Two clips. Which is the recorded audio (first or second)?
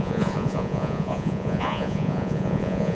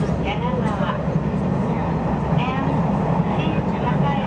second